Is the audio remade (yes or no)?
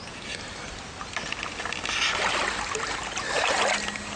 no